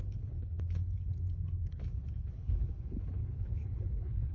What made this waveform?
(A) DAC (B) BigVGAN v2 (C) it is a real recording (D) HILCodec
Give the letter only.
D